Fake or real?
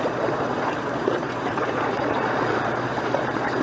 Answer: fake